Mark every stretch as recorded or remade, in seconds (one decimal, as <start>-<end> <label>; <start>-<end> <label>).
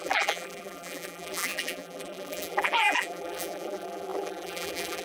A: 0.0-5.0 remade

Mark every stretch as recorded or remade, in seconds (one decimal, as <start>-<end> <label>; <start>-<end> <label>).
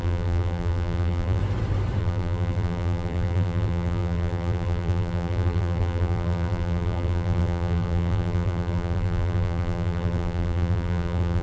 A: 0.0-1.4 remade; 1.4-2.0 recorded; 2.0-11.4 remade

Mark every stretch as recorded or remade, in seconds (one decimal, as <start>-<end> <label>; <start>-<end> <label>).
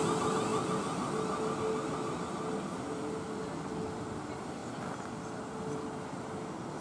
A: 0.0-6.8 recorded